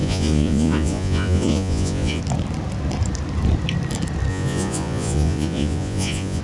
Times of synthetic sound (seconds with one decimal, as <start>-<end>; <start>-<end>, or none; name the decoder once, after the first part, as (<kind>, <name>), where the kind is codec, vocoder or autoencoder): 0.0-2.2 (vocoder, Vocos); 4.3-6.4